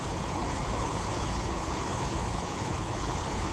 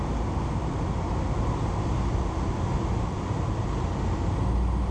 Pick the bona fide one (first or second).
second